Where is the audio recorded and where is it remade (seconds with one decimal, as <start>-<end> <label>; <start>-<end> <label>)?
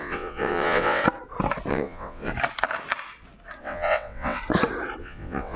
0.0-1.0 remade; 1.0-1.7 recorded; 1.7-2.3 remade; 2.3-3.6 recorded; 3.6-4.4 remade; 4.4-5.0 recorded; 5.0-5.6 remade